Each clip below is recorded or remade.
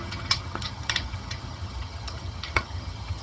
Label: remade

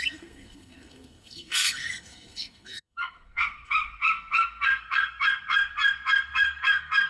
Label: remade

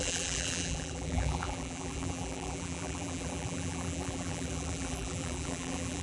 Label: remade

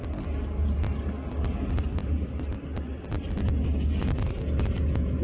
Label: recorded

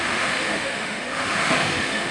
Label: remade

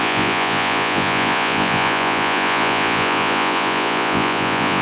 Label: remade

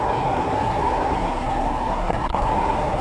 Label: remade